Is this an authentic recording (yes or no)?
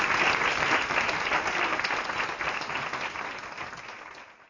yes